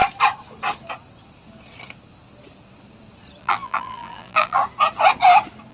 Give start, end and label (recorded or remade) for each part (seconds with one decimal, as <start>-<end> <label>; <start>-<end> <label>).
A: 0.0-3.4 recorded; 3.4-4.6 remade; 4.6-5.7 recorded